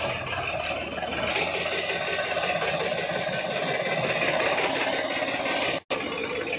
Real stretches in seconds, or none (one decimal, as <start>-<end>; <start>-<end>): 0.0-6.6